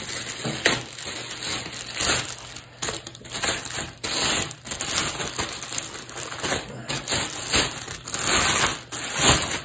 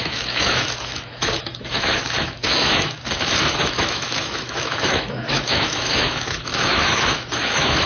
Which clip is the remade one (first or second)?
second